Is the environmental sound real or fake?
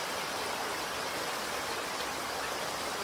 real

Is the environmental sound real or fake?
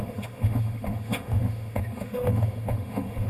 fake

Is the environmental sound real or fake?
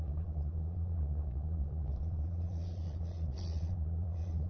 fake